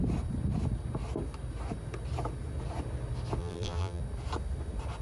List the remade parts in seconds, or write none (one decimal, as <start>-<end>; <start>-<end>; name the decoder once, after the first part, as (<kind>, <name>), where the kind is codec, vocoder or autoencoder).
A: 3.4-4.0 (vocoder, BigVGAN v2)